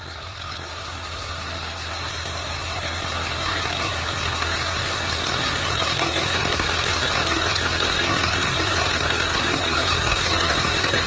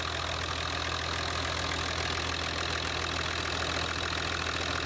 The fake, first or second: first